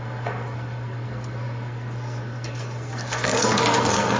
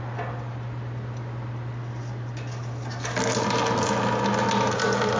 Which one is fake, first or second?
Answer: first